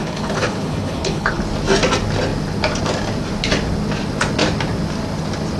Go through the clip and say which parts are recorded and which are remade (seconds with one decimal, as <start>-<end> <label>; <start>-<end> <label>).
0.0-1.4 remade; 1.4-5.6 recorded